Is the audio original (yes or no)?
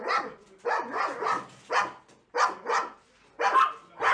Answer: yes